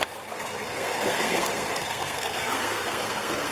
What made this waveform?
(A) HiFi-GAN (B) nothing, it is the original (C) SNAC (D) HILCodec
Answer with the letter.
C